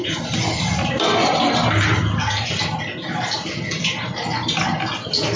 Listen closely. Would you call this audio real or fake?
real